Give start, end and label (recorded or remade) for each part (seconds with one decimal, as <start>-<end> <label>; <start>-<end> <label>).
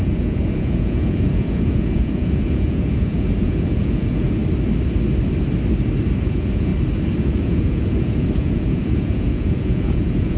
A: 0.0-4.4 remade; 4.4-6.2 recorded; 6.2-6.7 remade; 6.7-7.2 recorded; 7.2-10.4 remade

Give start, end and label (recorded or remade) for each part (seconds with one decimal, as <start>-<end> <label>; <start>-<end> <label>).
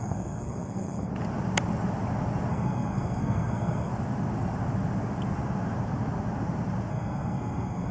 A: 0.0-1.1 remade; 1.1-2.5 recorded; 2.5-3.9 remade; 3.9-6.9 recorded; 6.9-7.9 remade